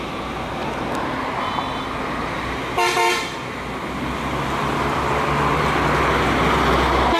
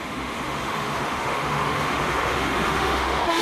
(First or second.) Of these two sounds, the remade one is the second